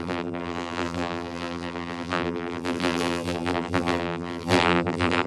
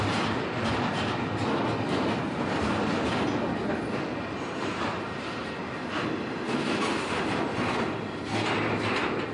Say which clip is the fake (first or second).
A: first